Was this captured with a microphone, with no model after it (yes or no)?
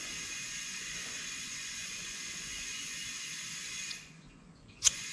no